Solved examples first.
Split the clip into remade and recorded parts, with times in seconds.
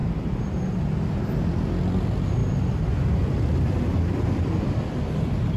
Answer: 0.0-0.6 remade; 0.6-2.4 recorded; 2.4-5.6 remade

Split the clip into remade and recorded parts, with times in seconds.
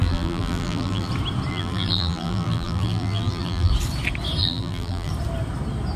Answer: 0.0-1.1 remade; 1.1-1.5 recorded; 1.5-3.7 remade; 3.7-4.4 recorded; 4.4-5.1 remade; 5.1-6.0 recorded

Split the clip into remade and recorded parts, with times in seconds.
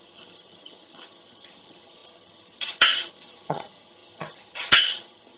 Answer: 0.0-5.4 remade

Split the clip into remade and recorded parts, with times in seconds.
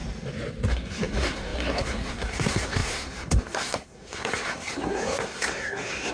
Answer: 0.0-0.7 recorded; 0.7-6.1 remade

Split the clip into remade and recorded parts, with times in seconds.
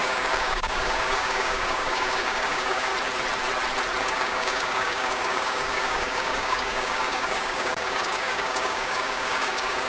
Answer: 0.0-2.9 remade; 2.9-4.0 recorded; 4.0-9.9 remade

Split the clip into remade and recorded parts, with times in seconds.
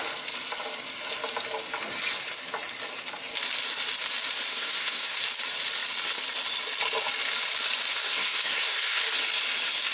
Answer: 0.0-4.5 recorded; 4.5-5.2 remade; 5.2-7.9 recorded; 7.9-9.0 remade; 9.0-9.9 recorded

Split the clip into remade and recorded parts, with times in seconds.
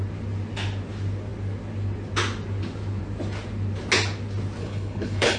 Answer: 0.0-4.6 recorded; 4.6-5.4 remade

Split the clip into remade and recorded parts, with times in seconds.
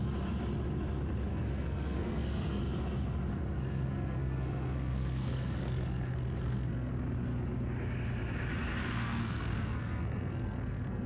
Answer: 0.0-1.3 recorded; 1.3-2.6 remade; 2.6-3.3 recorded; 3.3-6.9 remade; 6.9-8.8 recorded; 8.8-11.1 remade